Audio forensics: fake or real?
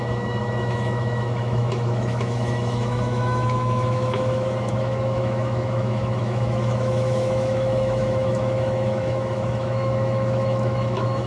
fake